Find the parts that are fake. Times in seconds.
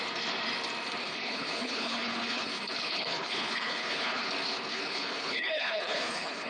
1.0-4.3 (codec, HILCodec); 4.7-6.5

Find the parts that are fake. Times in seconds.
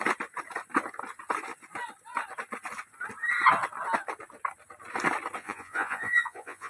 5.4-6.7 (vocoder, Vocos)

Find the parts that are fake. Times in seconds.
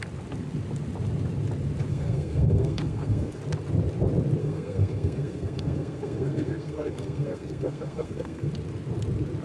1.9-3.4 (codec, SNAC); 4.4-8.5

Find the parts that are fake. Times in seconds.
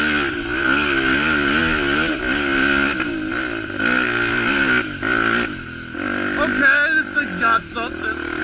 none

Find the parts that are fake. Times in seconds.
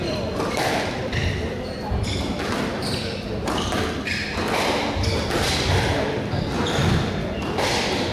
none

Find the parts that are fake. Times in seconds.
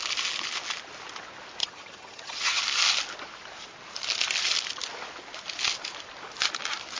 1.6-2.6 (vocoder, HiFi-GAN)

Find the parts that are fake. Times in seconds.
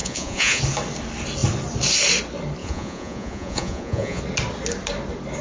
0.0-0.6 (vocoder, Vocos); 2.6-4.2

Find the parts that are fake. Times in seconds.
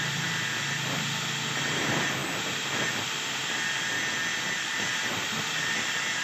none